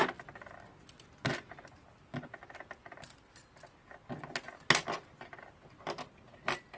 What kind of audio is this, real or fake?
real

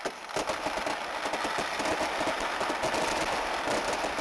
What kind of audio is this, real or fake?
real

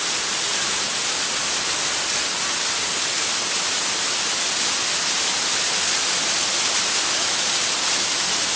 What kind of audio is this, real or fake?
real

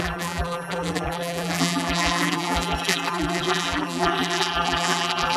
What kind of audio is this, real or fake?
fake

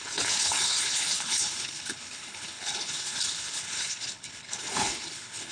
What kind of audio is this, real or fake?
fake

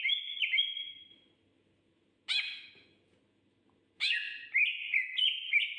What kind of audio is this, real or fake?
real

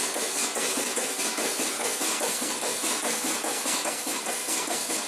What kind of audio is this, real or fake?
fake